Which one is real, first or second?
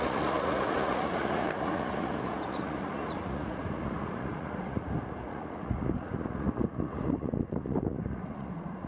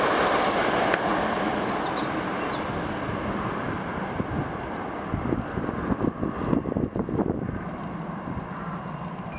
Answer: second